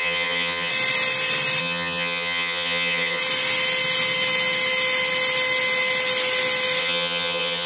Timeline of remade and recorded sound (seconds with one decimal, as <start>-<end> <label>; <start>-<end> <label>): 0.0-0.7 remade; 0.7-1.6 recorded; 1.6-3.2 remade; 3.2-6.8 recorded; 6.8-7.7 remade